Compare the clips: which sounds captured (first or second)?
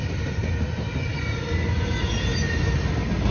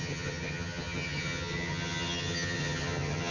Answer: first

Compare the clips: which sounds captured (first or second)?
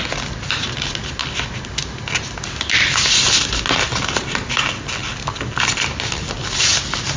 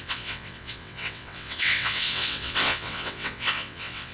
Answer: first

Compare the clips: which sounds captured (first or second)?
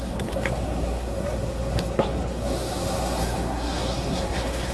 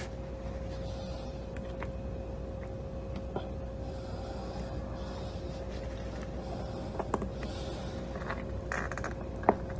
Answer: second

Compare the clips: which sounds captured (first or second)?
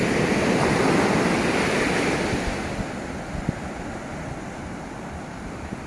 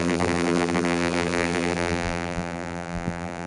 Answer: first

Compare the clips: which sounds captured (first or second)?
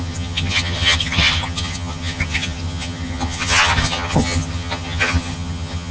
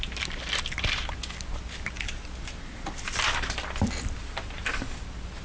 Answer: second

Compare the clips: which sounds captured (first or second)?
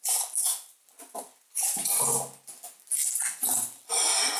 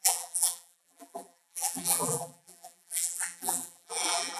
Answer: first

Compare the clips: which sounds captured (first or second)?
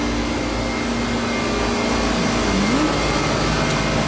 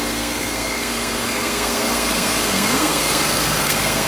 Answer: first